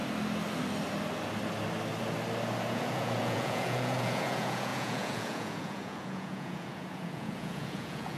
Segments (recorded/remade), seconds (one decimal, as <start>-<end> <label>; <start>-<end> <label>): 0.0-2.7 recorded; 2.7-8.2 remade